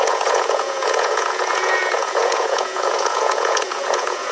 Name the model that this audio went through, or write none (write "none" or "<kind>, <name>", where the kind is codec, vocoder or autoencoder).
vocoder, Vocos